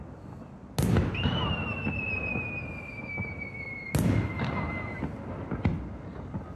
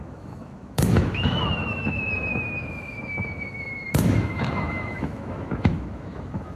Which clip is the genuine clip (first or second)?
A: first